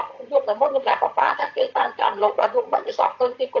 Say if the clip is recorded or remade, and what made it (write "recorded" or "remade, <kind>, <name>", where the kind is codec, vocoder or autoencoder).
remade, vocoder, HiFi-GAN